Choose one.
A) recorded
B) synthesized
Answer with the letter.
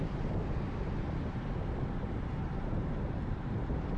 B